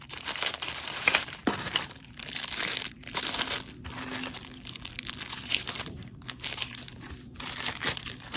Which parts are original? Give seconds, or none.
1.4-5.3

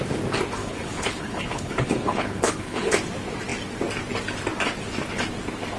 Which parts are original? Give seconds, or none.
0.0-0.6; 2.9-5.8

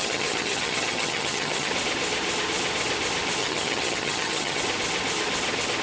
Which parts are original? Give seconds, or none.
1.7-3.4; 4.6-5.8